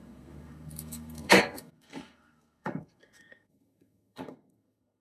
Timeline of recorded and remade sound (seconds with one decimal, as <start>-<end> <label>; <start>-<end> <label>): 0.0-5.0 remade